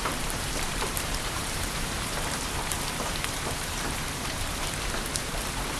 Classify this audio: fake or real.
fake